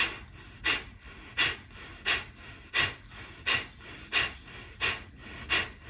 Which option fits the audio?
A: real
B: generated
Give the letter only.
A